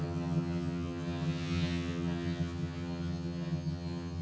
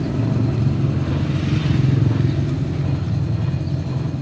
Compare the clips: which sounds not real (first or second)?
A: first